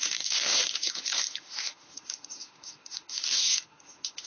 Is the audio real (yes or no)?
no